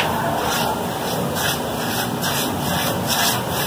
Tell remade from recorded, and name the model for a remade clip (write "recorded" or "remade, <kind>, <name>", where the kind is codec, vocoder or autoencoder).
recorded